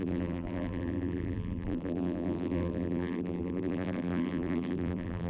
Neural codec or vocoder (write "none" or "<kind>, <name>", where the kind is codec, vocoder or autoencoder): vocoder, BigVGAN v2